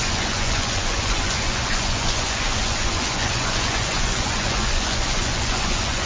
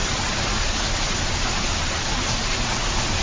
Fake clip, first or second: first